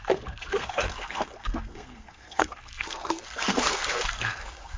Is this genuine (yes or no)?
no